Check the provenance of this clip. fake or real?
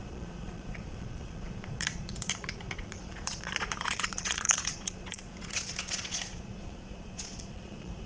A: fake